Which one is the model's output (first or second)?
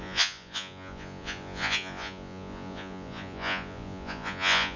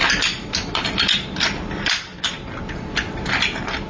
first